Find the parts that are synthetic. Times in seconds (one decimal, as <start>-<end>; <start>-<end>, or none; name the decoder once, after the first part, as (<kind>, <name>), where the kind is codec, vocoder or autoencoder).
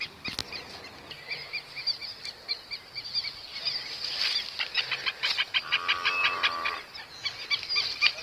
none